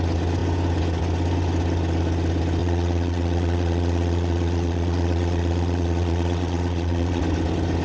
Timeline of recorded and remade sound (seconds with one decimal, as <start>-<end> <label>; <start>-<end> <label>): 0.0-2.6 recorded; 2.6-7.2 remade; 7.2-7.8 recorded